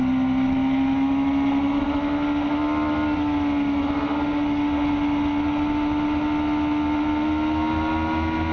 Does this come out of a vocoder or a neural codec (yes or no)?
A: no